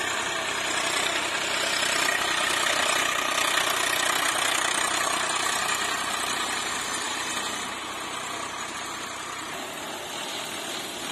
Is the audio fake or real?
real